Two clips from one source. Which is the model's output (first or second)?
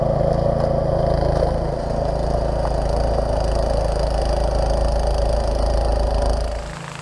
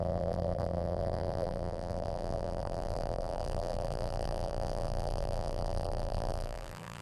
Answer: second